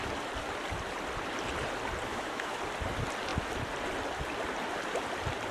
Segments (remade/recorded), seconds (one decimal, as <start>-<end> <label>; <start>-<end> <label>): 0.0-2.1 recorded; 2.1-2.6 remade; 2.6-5.5 recorded